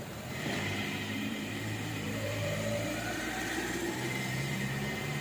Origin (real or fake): fake